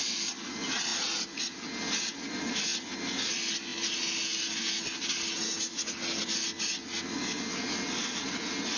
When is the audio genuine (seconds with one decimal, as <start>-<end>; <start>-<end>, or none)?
0.0-8.8